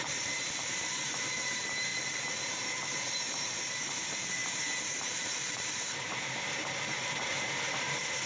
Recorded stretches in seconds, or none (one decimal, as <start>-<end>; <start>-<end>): 1.9-3.1

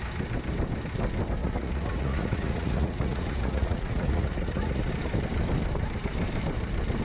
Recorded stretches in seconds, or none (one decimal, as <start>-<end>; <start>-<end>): 0.0-1.4; 4.9-7.0

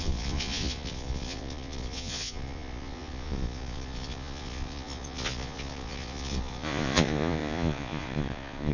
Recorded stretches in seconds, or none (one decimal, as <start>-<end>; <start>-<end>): none

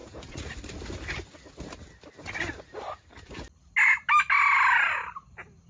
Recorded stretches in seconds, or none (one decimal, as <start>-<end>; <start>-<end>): 0.6-5.7

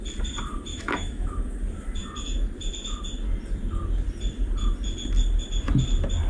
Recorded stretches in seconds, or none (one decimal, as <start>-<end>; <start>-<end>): 0.0-0.7; 1.3-6.3

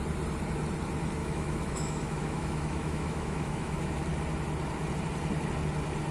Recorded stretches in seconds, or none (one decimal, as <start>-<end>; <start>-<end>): 0.0-1.2; 4.0-6.1